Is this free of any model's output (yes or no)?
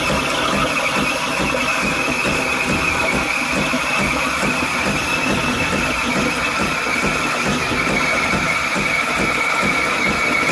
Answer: yes